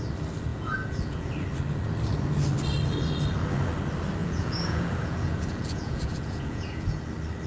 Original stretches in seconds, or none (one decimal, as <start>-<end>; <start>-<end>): 0.0-0.5; 1.3-4.2; 7.0-7.5